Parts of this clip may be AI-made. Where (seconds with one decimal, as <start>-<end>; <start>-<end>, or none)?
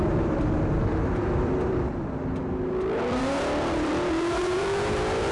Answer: 0.0-5.3